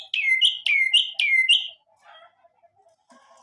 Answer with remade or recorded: recorded